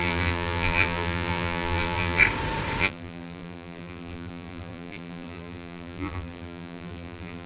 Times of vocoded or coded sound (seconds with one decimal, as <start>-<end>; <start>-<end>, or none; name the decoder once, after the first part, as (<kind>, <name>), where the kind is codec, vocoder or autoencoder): 0.0-2.2 (vocoder, BigVGAN v2); 2.8-7.5